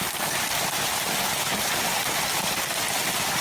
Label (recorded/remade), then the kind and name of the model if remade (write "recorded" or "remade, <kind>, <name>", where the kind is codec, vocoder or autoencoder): remade, vocoder, BigVGAN v2